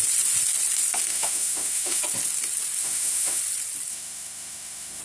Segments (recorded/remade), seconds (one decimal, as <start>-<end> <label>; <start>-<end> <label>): 0.0-1.1 recorded; 1.1-2.0 remade; 2.0-2.8 recorded; 2.8-3.4 remade; 3.4-3.9 recorded; 3.9-5.0 remade